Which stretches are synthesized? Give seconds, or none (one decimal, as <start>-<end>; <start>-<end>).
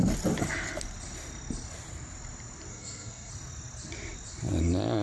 2.7-3.3